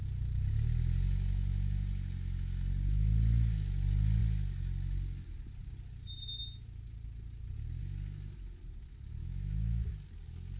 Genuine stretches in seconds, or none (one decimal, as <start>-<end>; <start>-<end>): 0.0-9.2; 9.9-10.6